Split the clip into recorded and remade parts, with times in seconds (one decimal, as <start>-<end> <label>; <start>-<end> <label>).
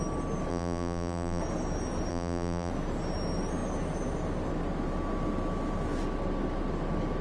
0.0-0.5 recorded; 0.5-1.4 remade; 1.4-2.1 recorded; 2.1-2.7 remade; 2.7-7.2 recorded